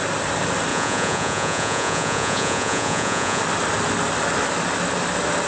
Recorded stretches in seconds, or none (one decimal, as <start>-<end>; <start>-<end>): 0.0-0.7; 3.4-5.5